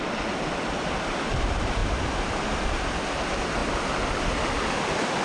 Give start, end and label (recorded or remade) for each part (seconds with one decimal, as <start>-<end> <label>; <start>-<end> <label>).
0.0-5.2 recorded